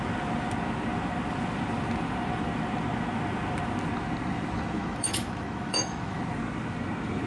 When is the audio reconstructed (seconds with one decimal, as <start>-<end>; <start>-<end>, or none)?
4.8-6.2